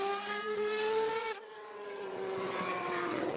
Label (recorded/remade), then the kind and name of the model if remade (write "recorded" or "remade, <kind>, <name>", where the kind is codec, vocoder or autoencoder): remade, vocoder, WaveNeXt